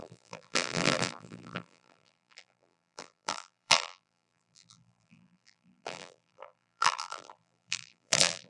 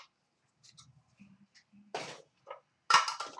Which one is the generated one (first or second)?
first